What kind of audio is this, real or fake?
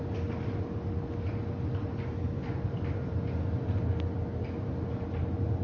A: real